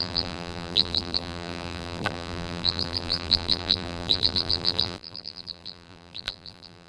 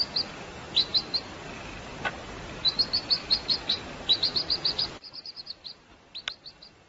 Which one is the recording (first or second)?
second